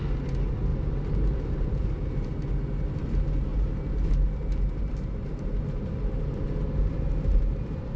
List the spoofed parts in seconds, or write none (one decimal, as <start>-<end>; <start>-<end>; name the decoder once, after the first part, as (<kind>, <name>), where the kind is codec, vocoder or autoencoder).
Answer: 0.7-2.3 (vocoder, BigVGAN v2); 3.5-8.0